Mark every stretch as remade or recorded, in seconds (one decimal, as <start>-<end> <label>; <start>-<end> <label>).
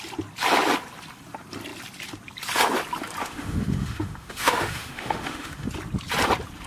0.0-3.2 recorded; 3.2-5.7 remade; 5.7-6.7 recorded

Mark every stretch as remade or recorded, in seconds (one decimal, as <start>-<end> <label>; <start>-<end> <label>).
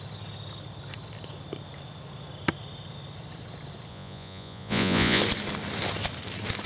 0.0-3.9 recorded; 3.9-5.2 remade; 5.2-6.7 recorded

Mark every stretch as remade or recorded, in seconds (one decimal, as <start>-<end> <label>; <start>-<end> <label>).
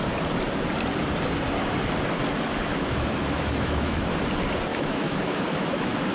0.0-2.7 recorded; 2.7-4.2 remade; 4.2-4.7 recorded; 4.7-6.1 remade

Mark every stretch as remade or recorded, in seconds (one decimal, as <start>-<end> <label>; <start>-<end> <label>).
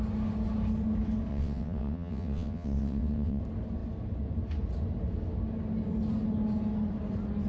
0.0-1.3 recorded; 1.3-3.4 remade; 3.4-7.5 recorded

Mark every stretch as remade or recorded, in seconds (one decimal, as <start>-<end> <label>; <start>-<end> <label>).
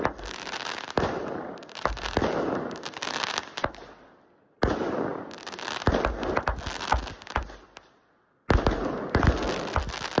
0.0-10.2 recorded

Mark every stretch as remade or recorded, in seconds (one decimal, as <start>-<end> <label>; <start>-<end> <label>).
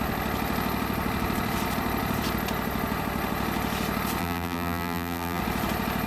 0.0-4.2 recorded; 4.2-5.4 remade; 5.4-6.1 recorded